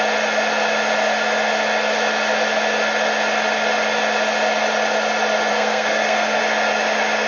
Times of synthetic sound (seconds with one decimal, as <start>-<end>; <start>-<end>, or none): 5.5-6.4